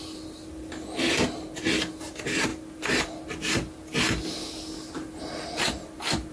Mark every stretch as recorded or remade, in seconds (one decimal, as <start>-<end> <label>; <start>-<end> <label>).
0.0-6.3 recorded